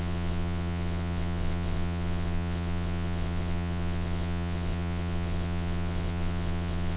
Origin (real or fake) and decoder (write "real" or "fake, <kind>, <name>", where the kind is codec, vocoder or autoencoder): fake, vocoder, WaveNeXt